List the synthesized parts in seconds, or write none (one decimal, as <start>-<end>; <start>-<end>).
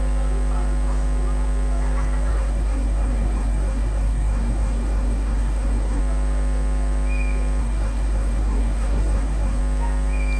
2.3-6.0; 7.6-9.6